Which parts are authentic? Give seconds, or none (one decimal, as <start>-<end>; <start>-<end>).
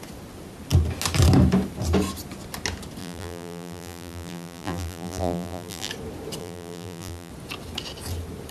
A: 0.0-3.0; 5.9-6.4; 7.3-8.5